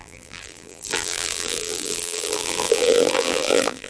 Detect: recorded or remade remade